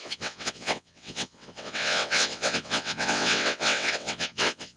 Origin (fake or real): fake